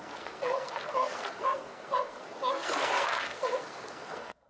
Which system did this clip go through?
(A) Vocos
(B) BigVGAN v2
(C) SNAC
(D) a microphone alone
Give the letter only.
C